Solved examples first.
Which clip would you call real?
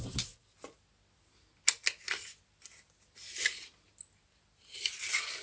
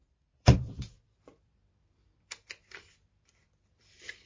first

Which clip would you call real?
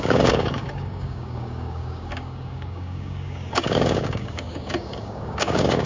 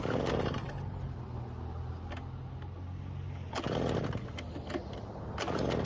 second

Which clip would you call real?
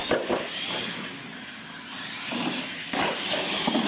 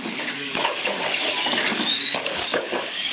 first